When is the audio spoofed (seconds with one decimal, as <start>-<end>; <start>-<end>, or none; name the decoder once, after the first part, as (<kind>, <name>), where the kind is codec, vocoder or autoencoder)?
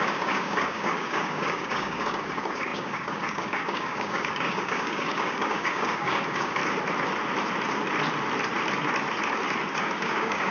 0.0-6.6 (codec, DAC); 9.8-10.5